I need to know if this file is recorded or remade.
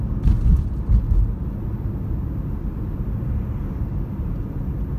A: recorded